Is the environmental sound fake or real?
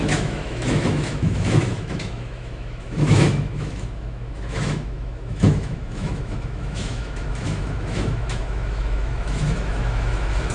fake